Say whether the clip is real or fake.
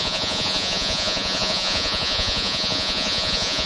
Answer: fake